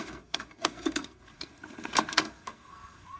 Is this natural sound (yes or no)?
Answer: no